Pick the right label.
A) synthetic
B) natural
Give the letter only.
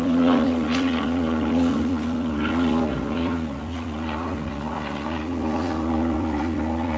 A